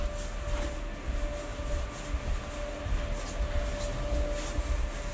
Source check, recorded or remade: recorded